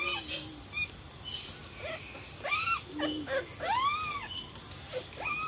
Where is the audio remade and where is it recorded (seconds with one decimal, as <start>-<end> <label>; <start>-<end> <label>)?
0.0-5.5 recorded